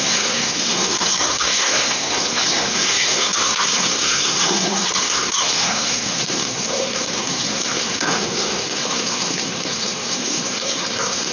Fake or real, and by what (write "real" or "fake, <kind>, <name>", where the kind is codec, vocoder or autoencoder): fake, codec, SNAC